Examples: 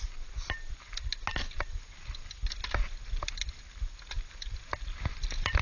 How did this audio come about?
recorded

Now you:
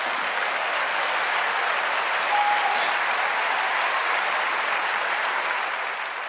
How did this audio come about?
recorded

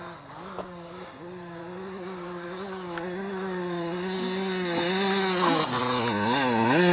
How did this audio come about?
recorded